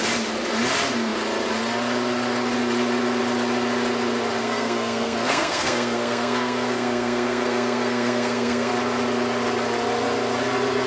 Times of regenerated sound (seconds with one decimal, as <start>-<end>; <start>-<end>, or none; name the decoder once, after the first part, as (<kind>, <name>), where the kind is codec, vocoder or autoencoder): 4.4-8.7 (codec, SNAC)

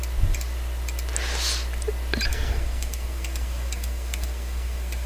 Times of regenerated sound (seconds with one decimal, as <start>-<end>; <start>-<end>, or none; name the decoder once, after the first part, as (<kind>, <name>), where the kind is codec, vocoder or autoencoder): 2.3-5.1 (codec, SNAC)

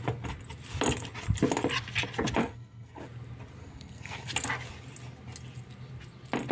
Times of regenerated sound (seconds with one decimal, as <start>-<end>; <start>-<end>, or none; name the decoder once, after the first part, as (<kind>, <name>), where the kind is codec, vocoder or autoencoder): 2.4-3.0 (codec, SNAC); 3.6-4.3

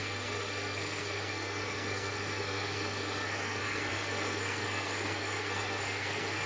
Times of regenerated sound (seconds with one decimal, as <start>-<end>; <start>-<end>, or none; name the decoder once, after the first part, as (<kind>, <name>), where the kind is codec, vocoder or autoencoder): 0.0-6.5 (codec, SNAC)

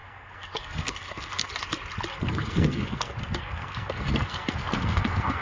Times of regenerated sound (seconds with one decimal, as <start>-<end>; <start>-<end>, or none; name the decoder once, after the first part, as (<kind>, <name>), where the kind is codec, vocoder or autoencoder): 0.0-1.5 (codec, SNAC); 2.1-5.4

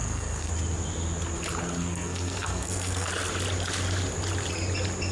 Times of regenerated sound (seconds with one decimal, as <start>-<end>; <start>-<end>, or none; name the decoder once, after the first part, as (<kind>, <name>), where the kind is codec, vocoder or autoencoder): 0.0-0.5 (codec, SNAC); 1.6-3.1